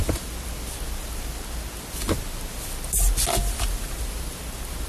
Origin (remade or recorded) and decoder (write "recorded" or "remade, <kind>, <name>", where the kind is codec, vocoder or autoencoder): recorded